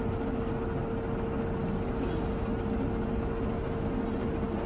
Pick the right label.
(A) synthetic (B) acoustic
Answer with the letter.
B